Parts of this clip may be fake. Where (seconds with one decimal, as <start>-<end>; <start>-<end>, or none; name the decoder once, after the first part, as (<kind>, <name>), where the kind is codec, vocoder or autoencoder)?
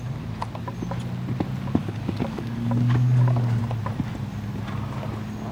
1.8-3.6 (codec, DAC)